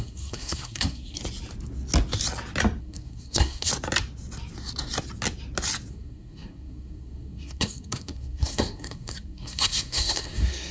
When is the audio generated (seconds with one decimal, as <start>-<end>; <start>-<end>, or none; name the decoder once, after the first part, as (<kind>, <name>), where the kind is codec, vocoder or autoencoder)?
0.0-1.2 (codec, SNAC); 2.8-3.7; 5.9-10.7